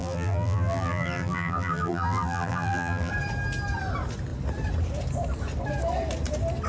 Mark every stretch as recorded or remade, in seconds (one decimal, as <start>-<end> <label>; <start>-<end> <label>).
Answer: 0.0-3.1 remade; 3.1-6.7 recorded